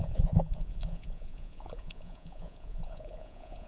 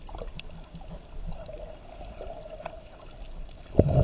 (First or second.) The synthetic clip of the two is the first